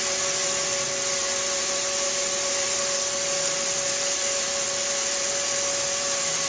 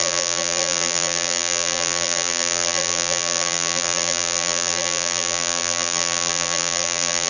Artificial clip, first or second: second